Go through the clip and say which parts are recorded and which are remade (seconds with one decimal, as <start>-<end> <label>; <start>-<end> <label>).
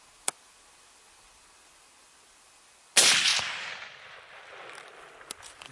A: 0.0-5.7 recorded